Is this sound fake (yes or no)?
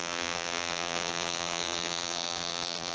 yes